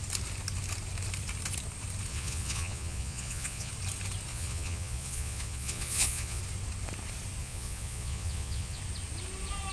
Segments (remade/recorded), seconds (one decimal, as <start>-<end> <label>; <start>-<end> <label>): 0.0-2.1 recorded; 2.1-3.7 remade; 3.7-4.3 recorded; 4.3-6.4 remade; 6.4-7.4 recorded; 7.4-8.8 remade; 8.8-9.7 recorded